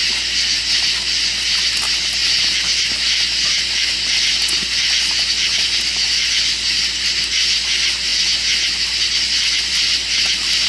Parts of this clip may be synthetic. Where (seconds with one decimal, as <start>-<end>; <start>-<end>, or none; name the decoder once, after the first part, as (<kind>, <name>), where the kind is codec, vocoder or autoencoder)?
none